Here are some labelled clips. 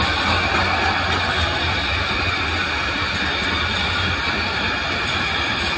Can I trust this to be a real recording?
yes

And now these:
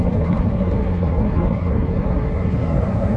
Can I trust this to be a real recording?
no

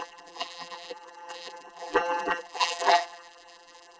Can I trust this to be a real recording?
no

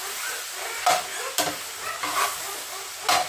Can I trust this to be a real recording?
yes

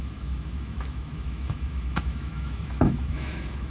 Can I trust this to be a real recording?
no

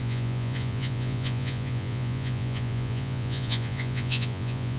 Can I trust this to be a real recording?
no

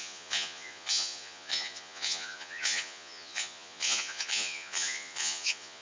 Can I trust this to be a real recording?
no